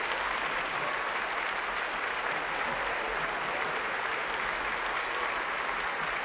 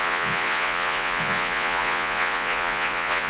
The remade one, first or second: second